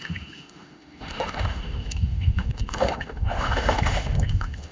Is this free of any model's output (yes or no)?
no